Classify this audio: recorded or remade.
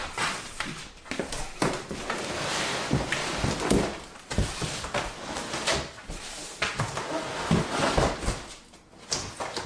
recorded